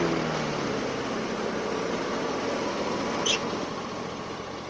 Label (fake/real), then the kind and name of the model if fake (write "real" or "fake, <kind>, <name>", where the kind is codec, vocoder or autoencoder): real